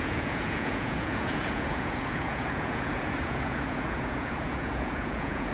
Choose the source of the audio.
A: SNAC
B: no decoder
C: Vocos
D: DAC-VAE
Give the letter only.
C